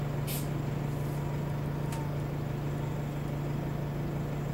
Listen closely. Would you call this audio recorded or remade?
recorded